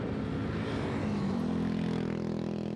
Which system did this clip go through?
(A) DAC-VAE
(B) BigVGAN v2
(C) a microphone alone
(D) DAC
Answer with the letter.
C